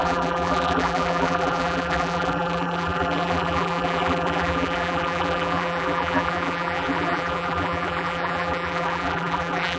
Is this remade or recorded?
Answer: remade